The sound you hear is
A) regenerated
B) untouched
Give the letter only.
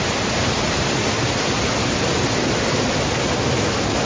B